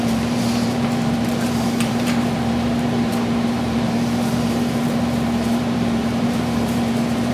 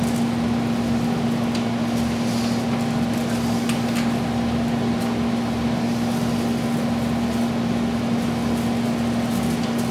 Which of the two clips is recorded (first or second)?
second